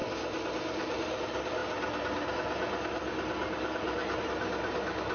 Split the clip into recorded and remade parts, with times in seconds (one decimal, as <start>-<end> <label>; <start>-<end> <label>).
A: 0.0-5.1 recorded

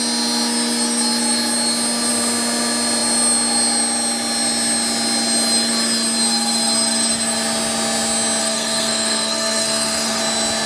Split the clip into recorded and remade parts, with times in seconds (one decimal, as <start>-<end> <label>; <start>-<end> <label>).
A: 0.0-8.4 recorded; 8.4-10.2 remade; 10.2-10.7 recorded

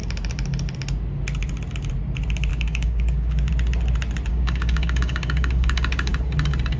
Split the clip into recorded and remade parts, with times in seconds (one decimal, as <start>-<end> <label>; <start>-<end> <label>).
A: 0.0-2.5 recorded; 2.5-3.5 remade; 3.5-4.3 recorded; 4.3-6.1 remade; 6.1-6.8 recorded

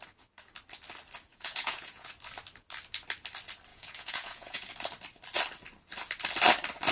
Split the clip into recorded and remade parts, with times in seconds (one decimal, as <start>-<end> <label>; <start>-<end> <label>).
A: 0.0-1.3 recorded; 1.3-2.1 remade; 2.1-3.7 recorded; 3.7-4.7 remade; 4.7-6.9 recorded

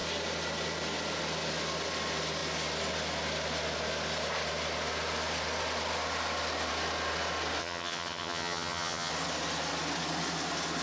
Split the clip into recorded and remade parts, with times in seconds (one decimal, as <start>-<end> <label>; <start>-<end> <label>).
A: 0.0-7.6 recorded; 7.6-9.1 remade; 9.1-10.8 recorded

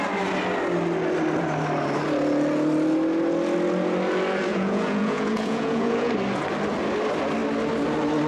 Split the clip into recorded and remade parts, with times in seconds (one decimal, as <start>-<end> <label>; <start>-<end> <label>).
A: 0.0-4.5 recorded; 4.5-6.1 remade; 6.1-8.3 recorded

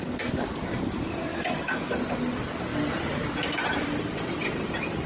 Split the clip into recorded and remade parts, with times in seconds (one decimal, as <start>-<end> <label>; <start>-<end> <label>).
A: 0.0-1.3 recorded; 1.3-1.9 remade; 1.9-5.1 recorded